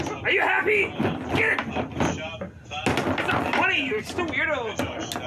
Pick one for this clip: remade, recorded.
recorded